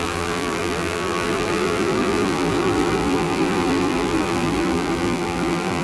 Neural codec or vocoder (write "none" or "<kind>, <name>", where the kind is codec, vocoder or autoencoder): vocoder, BigVGAN v2